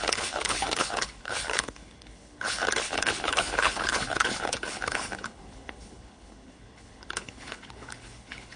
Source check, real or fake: fake